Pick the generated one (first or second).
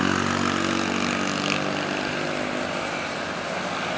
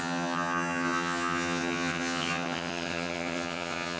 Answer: second